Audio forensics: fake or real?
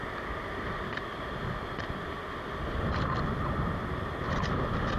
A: real